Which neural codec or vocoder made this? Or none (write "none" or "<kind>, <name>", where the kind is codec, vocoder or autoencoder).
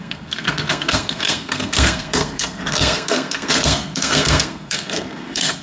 codec, SNAC